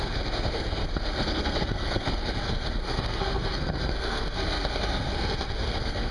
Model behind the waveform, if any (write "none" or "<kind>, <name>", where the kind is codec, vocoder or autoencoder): codec, SNAC